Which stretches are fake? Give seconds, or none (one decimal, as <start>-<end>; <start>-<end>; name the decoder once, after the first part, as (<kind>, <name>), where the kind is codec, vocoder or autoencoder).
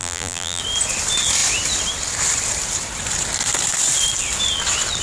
0.0-0.6 (vocoder, BigVGAN v2)